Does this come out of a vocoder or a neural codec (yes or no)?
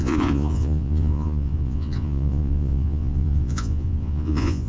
yes